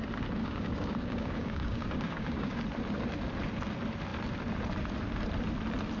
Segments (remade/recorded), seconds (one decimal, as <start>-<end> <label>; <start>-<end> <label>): 0.0-0.4 recorded; 0.4-2.6 remade; 2.6-6.0 recorded